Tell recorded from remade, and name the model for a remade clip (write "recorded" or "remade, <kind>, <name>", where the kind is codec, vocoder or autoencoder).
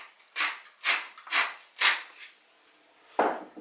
recorded